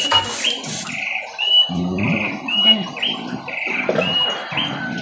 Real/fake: real